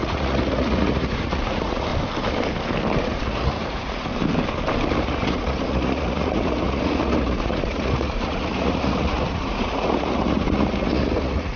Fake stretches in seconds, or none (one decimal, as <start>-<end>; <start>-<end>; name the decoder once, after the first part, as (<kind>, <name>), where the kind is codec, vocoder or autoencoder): 0.0-1.9 (vocoder, Vocos); 3.0-4.1; 5.0-11.6